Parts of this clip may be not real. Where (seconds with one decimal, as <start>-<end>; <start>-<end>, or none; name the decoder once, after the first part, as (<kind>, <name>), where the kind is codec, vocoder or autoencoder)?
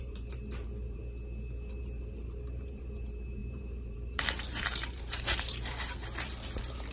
0.0-1.0 (vocoder, BigVGAN v2); 1.8-6.9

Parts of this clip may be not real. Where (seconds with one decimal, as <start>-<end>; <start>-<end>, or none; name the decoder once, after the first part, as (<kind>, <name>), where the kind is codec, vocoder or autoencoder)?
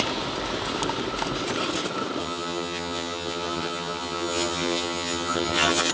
2.2-5.9 (vocoder, HiFi-GAN)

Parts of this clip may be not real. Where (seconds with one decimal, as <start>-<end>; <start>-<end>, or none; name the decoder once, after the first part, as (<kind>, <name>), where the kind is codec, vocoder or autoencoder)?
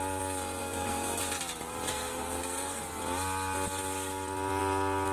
0.6-1.2 (codec, SNAC); 1.9-2.8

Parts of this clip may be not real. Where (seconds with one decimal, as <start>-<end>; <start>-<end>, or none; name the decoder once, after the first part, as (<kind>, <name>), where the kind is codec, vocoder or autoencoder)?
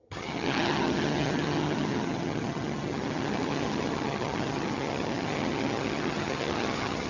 0.0-7.1 (vocoder, HiFi-GAN)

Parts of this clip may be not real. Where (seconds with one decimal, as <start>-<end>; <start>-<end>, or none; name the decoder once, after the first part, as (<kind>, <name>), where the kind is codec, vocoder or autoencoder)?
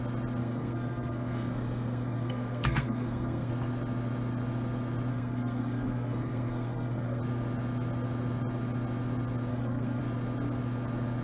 0.4-3.5 (codec, SNAC); 5.1-7.2; 9.5-10.0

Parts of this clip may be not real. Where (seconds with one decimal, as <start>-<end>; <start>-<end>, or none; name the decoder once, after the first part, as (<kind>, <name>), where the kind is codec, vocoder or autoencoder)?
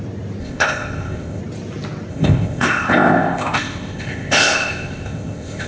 0.4-1.4 (codec, ZipCodec); 2.1-5.7